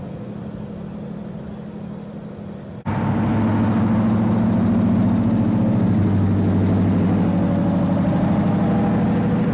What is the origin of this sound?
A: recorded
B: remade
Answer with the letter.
A